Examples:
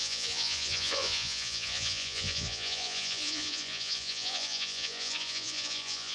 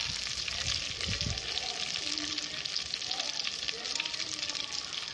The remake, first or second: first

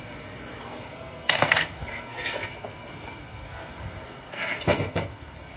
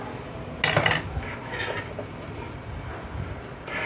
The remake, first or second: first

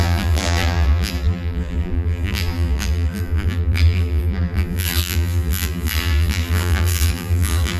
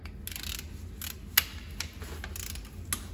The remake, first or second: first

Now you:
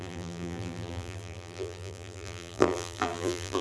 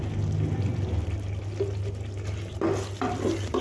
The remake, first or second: first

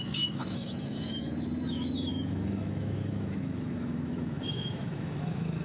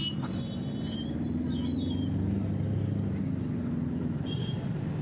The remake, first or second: first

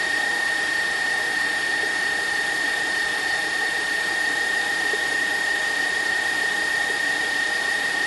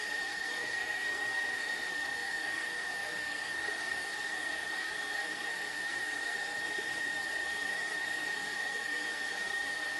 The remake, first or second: second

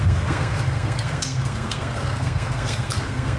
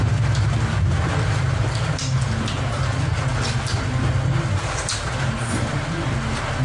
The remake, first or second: first